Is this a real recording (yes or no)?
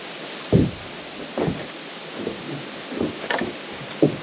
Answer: yes